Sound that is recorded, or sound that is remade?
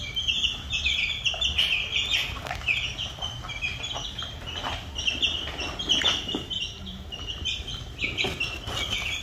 remade